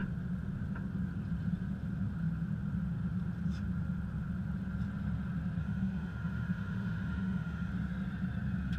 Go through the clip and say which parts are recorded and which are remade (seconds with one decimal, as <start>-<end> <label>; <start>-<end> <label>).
0.0-5.6 recorded; 5.6-7.7 remade; 7.7-8.8 recorded